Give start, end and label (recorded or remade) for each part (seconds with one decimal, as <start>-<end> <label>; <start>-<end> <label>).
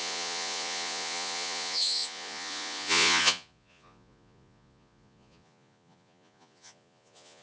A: 0.0-7.4 remade